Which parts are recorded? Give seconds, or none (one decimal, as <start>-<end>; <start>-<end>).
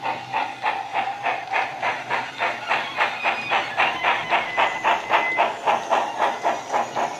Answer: 0.0-0.9; 2.1-7.2